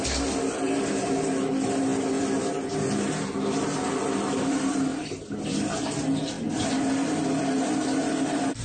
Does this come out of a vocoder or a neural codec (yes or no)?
no